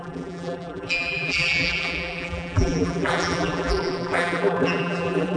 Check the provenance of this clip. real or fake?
fake